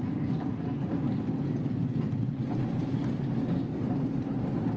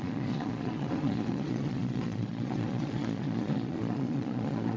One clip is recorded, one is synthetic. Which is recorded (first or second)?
first